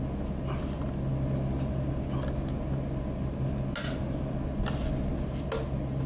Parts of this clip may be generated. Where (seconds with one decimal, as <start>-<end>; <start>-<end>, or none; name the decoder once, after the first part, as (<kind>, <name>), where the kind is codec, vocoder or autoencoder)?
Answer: none